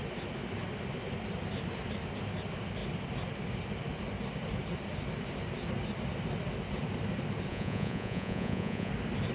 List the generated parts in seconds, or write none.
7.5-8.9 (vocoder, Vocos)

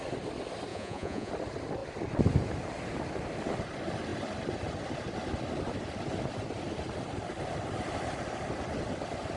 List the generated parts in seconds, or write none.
0.7-1.3 (vocoder, Vocos)

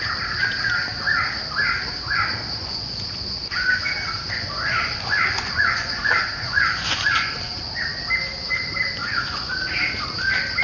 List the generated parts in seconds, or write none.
2.6-7.3 (vocoder, Vocos); 9.0-9.5

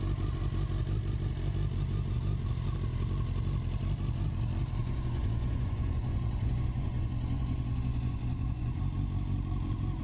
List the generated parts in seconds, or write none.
4.8-8.8 (vocoder, Vocos)

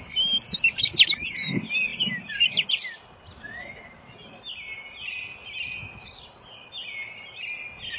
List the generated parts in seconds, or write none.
none

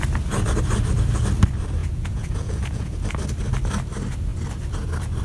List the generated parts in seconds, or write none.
1.8-2.9 (vocoder, Vocos)

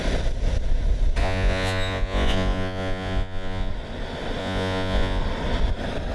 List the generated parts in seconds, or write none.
1.2-3.7 (vocoder, Vocos); 4.4-5.2